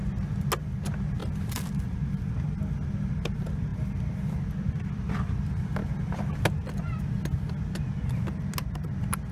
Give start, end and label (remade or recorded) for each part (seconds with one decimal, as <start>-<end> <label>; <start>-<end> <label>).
0.0-1.2 recorded; 1.2-2.9 remade; 2.9-3.7 recorded; 3.7-4.3 remade; 4.3-9.3 recorded